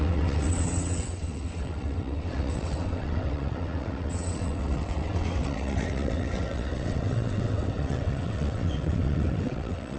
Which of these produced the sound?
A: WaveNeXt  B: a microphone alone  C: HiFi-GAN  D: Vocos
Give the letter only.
A